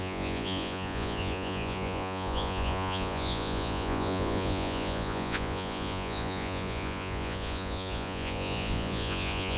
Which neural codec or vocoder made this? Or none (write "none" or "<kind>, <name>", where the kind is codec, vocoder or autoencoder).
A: vocoder, Vocos